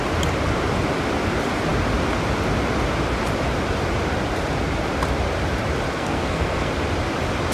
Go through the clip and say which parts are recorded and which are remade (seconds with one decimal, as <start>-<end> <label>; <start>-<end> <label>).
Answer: 0.0-5.9 recorded; 5.9-6.7 remade; 6.7-7.5 recorded